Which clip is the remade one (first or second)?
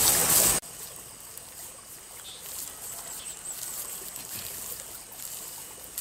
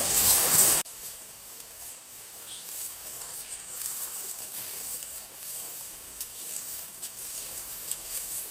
second